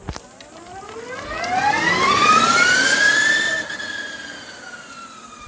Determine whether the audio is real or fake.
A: real